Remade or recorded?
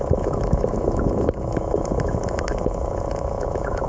remade